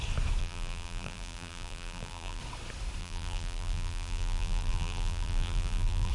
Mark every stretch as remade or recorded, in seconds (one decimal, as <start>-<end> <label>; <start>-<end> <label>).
0.0-0.4 recorded; 0.4-2.4 remade; 2.4-3.0 recorded; 3.0-6.1 remade